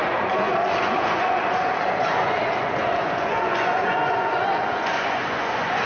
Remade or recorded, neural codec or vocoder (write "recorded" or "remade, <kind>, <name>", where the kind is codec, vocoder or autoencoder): remade, vocoder, Vocos